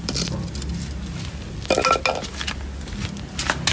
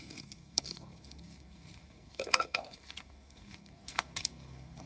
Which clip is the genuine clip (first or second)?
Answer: first